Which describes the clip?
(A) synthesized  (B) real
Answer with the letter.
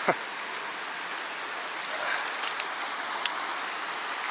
B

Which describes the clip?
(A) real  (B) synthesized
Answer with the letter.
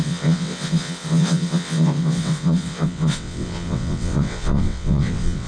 B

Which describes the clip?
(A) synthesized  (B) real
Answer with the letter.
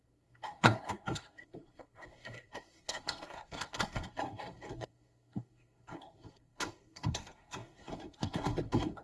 A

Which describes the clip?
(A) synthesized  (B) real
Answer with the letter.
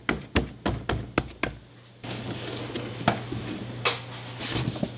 B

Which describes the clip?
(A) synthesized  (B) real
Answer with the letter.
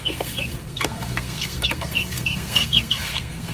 A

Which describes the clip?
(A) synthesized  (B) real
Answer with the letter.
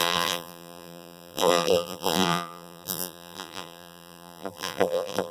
A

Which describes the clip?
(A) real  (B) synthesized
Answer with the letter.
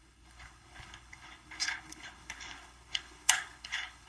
B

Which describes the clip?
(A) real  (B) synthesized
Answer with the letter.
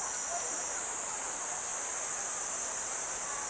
A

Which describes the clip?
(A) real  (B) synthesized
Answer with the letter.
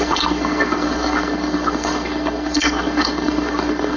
B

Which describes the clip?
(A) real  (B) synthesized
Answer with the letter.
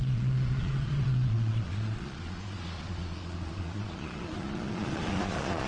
B